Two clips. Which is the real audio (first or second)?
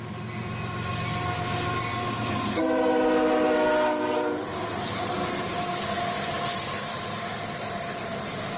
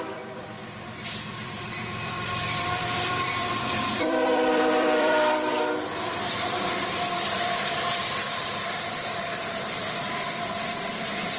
first